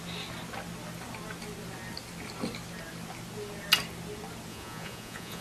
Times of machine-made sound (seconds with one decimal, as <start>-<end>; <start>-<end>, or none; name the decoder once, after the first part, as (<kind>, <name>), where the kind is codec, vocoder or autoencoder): 4.5-5.4 (vocoder, Vocos)